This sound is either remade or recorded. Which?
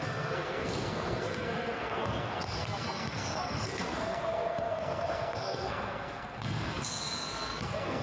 remade